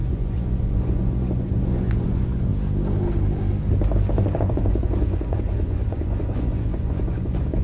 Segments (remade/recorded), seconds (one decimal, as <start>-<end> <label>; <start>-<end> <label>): 0.0-2.5 remade; 2.5-4.4 recorded; 4.4-7.6 remade